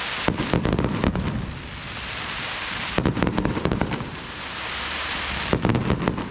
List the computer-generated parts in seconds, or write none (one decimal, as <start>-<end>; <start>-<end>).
1.8-5.4